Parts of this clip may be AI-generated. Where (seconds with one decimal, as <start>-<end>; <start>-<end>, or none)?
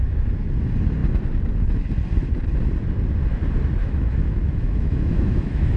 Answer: 3.8-5.8